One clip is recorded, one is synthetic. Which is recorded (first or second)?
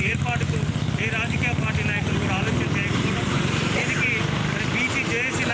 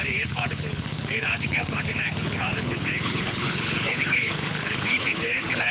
first